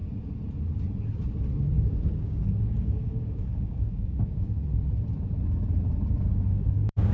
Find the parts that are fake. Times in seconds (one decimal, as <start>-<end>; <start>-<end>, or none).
1.6-4.6; 6.2-7.1